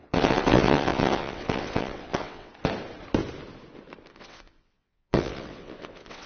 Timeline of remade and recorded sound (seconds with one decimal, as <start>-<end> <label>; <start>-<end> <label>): 0.0-2.5 remade; 2.5-4.1 recorded; 4.1-6.3 remade